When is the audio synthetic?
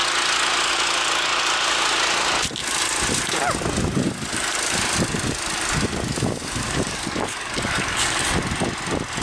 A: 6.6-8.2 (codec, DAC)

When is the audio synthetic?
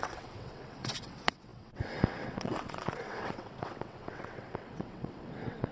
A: 0.0-5.7 (vocoder, WaveNeXt)